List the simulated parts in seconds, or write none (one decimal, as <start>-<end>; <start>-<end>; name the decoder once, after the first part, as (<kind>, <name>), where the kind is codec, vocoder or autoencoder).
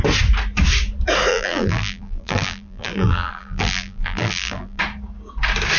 1.3-4.8 (vocoder, BigVGAN v2)